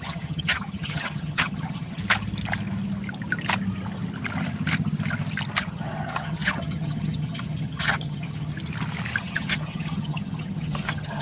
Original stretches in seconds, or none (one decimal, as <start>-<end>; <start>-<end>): 2.0-5.6; 8.5-9.2